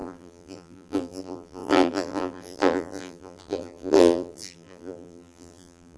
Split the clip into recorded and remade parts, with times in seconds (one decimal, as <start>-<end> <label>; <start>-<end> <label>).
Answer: 0.0-6.0 remade